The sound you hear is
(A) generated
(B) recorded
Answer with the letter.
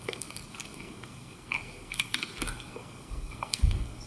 A